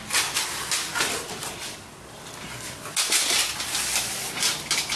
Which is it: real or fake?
fake